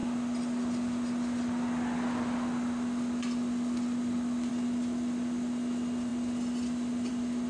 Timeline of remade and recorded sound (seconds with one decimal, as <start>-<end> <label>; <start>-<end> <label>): 0.0-7.5 recorded